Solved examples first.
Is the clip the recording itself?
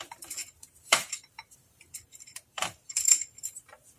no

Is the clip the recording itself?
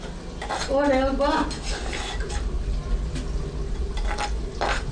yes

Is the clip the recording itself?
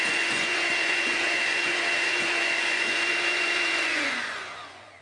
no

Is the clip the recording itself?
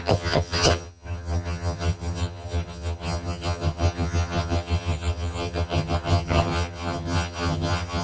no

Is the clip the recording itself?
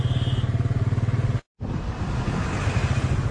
yes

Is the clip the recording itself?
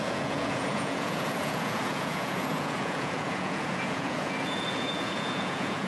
no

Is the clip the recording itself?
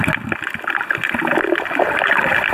yes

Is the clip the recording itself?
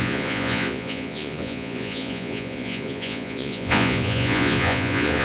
no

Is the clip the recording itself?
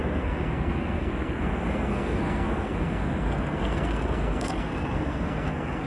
no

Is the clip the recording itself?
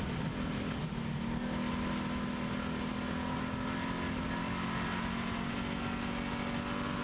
yes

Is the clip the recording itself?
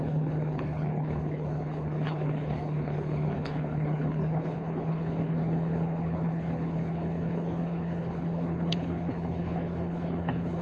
no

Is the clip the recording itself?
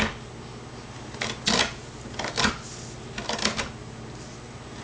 yes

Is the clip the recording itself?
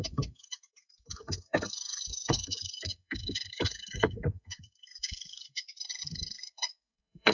no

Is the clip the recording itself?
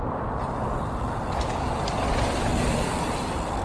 yes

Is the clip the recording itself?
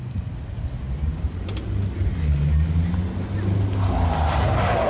yes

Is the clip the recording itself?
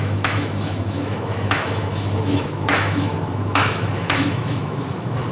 no